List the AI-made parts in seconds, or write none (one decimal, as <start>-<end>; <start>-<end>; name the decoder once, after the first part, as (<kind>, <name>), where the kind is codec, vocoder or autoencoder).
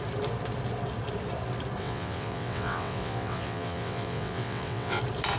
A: 1.8-5.0 (vocoder, WaveNeXt)